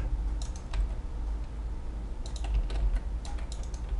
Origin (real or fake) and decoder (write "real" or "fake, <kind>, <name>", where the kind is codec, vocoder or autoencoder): real